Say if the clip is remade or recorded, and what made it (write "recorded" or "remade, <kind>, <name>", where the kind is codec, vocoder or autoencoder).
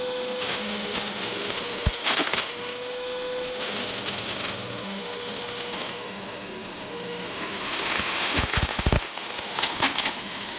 remade, autoencoder, DAC-VAE